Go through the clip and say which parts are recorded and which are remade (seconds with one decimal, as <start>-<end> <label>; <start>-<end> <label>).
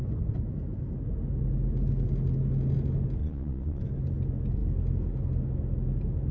0.0-3.2 recorded; 3.2-3.8 remade; 3.8-6.3 recorded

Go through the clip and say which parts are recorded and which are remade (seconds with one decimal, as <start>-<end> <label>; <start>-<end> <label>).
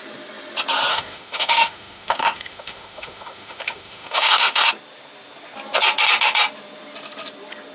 0.0-0.9 recorded; 0.9-4.7 remade; 4.7-7.7 recorded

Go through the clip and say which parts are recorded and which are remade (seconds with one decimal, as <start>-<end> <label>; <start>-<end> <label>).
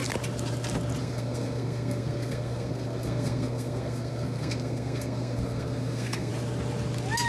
0.0-1.0 recorded; 1.0-6.3 remade; 6.3-7.3 recorded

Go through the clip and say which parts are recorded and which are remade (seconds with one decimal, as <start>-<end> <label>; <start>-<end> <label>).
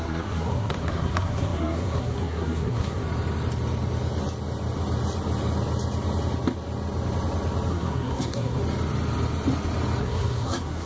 0.0-3.0 remade; 3.0-7.7 recorded; 7.7-8.6 remade; 8.6-10.0 recorded; 10.0-10.9 remade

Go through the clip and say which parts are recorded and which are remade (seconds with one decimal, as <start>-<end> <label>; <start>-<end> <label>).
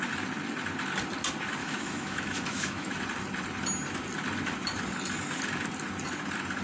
0.0-1.6 recorded; 1.6-3.0 remade; 3.0-6.6 recorded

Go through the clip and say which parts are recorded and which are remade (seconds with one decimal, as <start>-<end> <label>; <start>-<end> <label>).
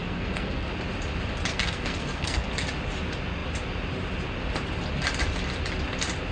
0.0-0.7 remade; 0.7-1.5 recorded; 1.5-2.5 remade; 2.5-6.3 recorded